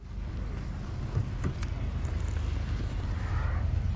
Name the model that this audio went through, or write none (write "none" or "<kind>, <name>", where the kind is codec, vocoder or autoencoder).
none